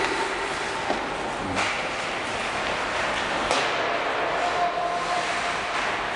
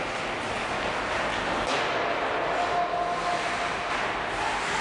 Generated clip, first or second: first